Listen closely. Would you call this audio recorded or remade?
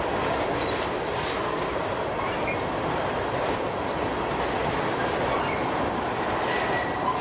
recorded